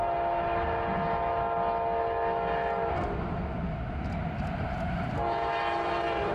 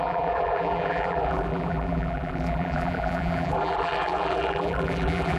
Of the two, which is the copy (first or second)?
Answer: second